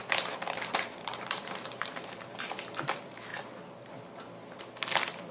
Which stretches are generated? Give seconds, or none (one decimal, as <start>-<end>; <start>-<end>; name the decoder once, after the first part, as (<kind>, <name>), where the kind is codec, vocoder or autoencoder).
0.0-2.5 (vocoder, BigVGAN v2)